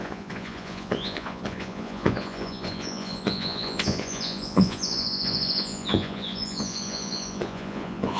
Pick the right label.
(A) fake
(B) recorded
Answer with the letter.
A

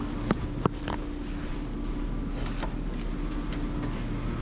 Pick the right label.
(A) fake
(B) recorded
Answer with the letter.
B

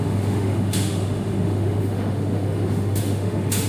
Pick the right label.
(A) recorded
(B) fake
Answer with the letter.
B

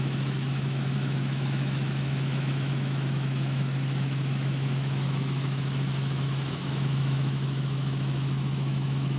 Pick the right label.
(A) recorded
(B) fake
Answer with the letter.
B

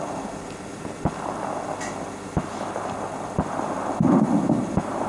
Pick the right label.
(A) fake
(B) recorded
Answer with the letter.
B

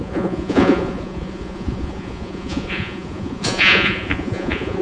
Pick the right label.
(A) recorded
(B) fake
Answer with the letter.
B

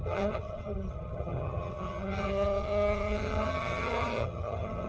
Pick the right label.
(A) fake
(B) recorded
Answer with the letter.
A